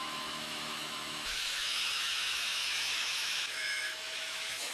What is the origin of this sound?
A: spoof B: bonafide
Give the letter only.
A